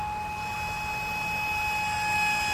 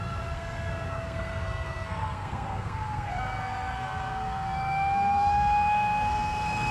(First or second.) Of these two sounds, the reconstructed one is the second